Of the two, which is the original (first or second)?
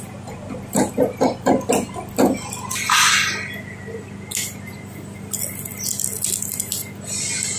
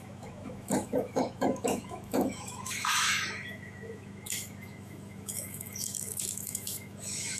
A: first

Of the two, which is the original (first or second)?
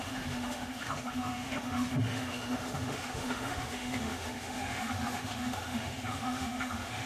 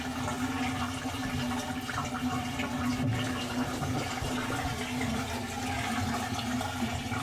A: second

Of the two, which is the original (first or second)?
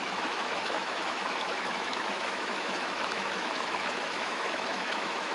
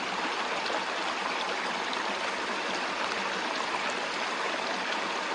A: second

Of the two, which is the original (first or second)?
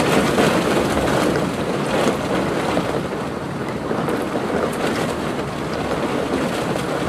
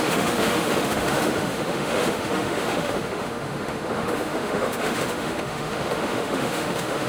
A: first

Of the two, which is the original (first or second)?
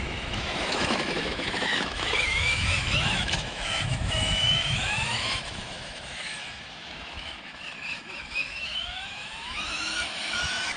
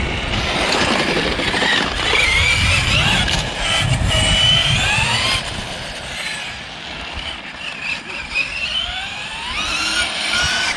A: second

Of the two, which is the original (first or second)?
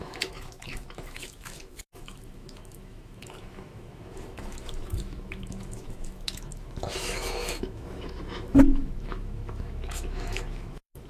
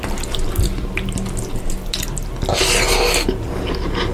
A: second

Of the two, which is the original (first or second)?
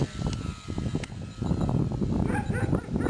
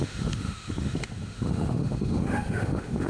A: first